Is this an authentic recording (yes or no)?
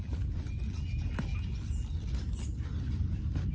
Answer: yes